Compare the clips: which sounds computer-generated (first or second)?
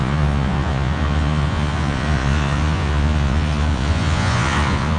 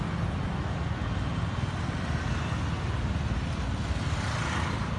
first